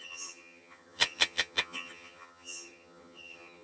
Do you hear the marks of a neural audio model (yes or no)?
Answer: yes